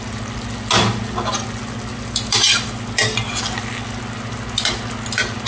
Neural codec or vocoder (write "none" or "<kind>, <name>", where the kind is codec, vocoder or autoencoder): none